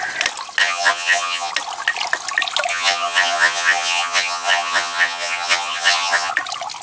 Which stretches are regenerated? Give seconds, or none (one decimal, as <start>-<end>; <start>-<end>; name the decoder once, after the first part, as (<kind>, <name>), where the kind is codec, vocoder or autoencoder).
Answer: 0.6-1.5 (vocoder, HiFi-GAN); 2.7-6.3